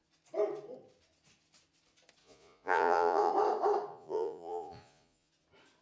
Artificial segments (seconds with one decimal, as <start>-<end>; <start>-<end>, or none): 2.2-3.3; 3.9-5.3